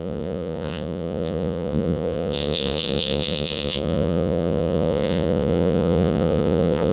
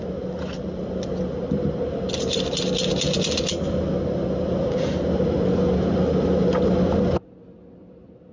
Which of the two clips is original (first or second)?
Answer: second